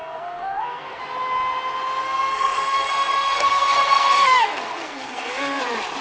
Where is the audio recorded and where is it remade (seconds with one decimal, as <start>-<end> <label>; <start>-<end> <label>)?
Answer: 0.0-1.0 remade; 1.0-2.0 recorded; 2.0-5.6 remade; 5.6-6.0 recorded